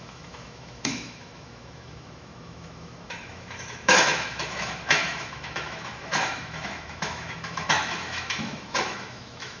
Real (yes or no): no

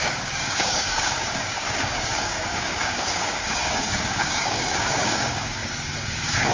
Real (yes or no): no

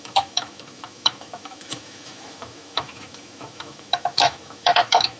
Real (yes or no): no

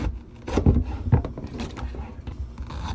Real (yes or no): yes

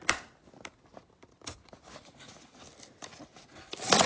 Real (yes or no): yes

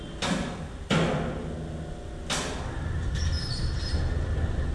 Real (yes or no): yes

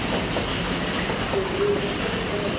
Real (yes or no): yes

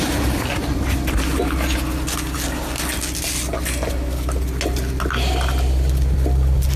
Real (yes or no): yes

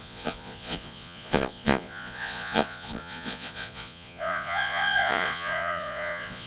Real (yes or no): no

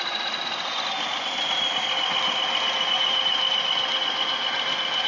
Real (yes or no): yes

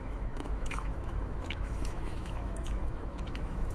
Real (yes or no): no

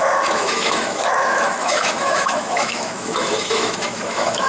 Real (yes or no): no